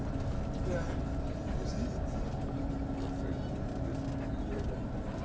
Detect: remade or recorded recorded